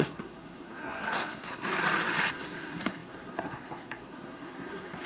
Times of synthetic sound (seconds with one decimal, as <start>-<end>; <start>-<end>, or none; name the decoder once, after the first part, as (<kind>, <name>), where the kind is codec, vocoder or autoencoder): 0.0-1.7 (codec, SNAC); 2.3-5.1